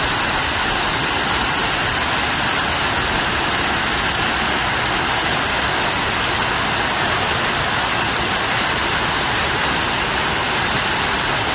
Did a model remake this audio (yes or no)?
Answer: no